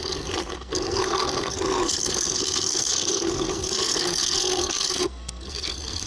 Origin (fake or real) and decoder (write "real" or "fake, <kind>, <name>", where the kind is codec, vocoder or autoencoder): fake, codec, SNAC